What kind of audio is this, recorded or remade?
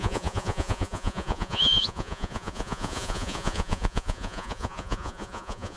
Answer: remade